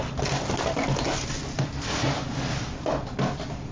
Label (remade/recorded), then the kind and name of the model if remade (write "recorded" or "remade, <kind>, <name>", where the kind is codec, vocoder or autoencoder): recorded